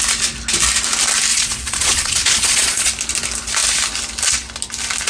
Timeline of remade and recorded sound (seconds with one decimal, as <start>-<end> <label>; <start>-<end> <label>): 0.0-1.3 recorded; 1.3-2.9 remade; 2.9-5.1 recorded